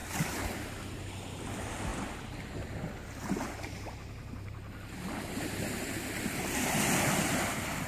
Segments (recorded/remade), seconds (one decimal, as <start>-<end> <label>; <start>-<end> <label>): 0.0-7.9 remade